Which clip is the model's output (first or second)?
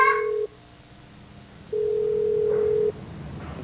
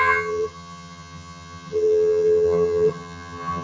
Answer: second